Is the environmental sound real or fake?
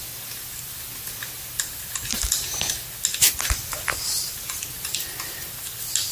real